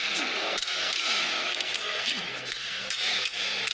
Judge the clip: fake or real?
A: fake